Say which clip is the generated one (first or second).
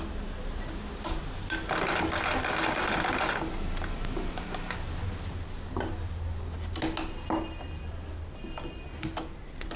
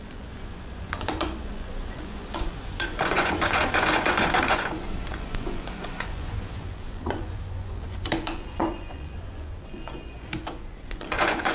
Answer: second